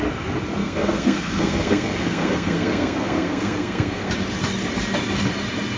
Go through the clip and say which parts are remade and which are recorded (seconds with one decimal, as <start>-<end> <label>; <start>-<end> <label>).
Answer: 0.0-0.6 recorded; 0.6-4.1 remade; 4.1-5.8 recorded